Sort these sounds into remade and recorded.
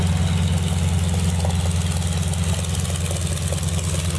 recorded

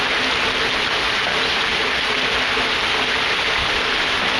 recorded